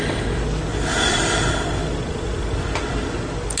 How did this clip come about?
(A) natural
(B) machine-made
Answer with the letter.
A